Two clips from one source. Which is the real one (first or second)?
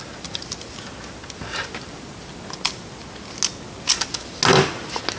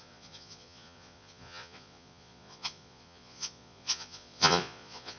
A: first